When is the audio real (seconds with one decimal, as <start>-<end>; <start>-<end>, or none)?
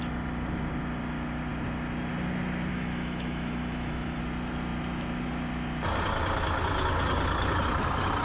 0.0-2.7; 4.2-8.2